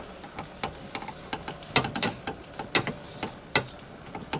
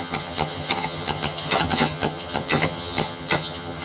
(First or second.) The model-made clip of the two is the second